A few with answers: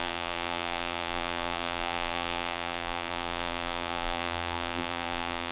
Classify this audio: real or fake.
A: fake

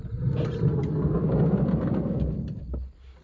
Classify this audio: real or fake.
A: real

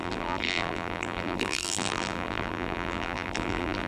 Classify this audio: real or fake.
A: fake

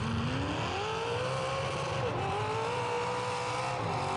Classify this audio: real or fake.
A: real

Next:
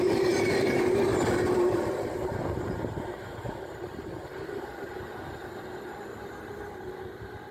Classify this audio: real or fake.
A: fake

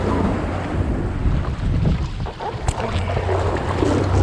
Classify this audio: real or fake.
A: real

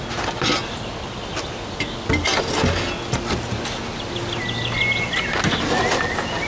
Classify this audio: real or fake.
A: real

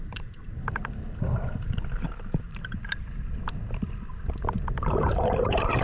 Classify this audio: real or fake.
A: fake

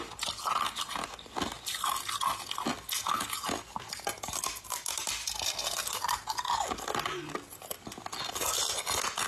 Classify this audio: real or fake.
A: real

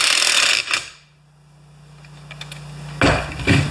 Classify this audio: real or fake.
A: real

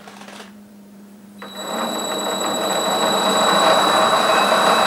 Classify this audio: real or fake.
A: fake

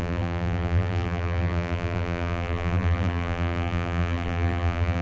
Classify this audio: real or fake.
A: fake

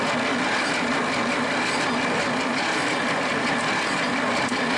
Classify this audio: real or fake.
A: real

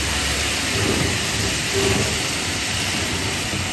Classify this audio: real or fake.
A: real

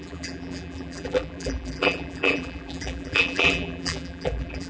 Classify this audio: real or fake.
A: fake